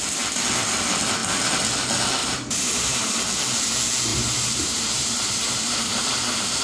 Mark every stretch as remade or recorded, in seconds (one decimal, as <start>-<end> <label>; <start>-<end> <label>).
0.0-2.2 recorded; 2.2-3.2 remade; 3.2-4.1 recorded; 4.1-6.6 remade